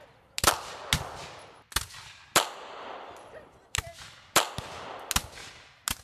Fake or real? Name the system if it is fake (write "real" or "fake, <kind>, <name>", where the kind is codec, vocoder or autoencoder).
real